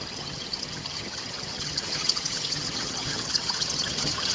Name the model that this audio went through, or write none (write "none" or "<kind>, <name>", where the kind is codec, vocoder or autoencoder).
vocoder, HiFi-GAN